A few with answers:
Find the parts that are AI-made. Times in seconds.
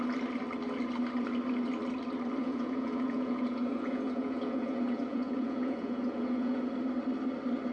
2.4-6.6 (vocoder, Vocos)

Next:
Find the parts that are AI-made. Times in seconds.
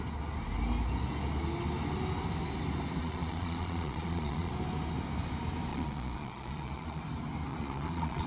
3.0-4.5 (vocoder, Vocos); 5.7-7.0; 7.5-8.3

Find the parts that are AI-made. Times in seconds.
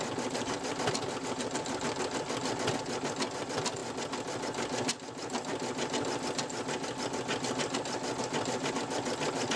none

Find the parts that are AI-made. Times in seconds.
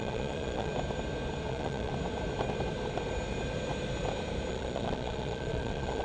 0.0-0.7 (vocoder, Vocos); 1.5-1.9; 4.5-6.0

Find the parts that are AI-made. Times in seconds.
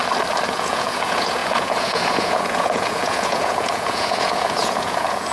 0.5-5.3 (vocoder, Vocos)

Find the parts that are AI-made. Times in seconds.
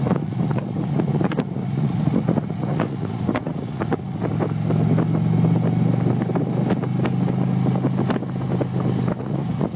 0.0-4.3 (vocoder, Vocos); 9.2-9.8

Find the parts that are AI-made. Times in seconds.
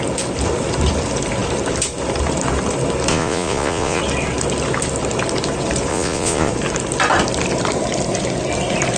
3.1-4.0 (vocoder, Vocos); 5.9-6.5